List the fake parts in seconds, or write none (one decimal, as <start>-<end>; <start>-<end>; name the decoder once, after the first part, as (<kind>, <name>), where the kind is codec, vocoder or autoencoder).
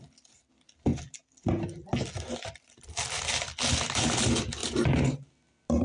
4.6-5.3 (vocoder, BigVGAN v2)